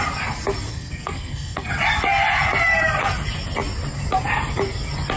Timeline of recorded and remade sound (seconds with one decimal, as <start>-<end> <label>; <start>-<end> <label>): 0.0-0.7 recorded; 0.7-1.7 remade; 1.7-5.2 recorded